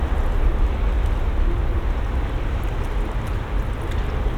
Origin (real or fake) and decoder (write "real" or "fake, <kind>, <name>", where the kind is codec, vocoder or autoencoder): real